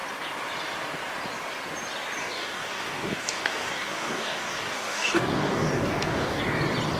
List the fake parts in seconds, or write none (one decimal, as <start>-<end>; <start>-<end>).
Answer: 2.2-6.4